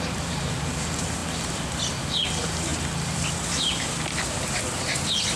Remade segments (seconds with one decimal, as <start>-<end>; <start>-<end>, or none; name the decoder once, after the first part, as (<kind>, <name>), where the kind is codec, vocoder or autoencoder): 0.0-5.4 (vocoder, BigVGAN v2)